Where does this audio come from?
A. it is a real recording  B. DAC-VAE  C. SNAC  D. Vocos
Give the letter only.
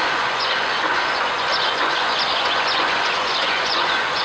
D